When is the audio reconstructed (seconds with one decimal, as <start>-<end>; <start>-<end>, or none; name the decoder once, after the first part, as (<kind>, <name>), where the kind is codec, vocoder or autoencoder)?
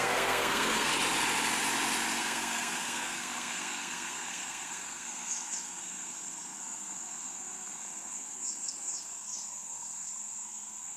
0.0-0.9 (codec, SNAC); 2.2-11.0